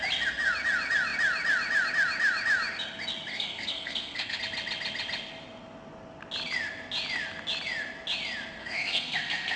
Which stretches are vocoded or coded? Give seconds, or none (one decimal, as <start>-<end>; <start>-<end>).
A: 3.3-4.4; 8.6-9.6